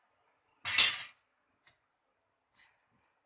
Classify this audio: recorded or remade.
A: recorded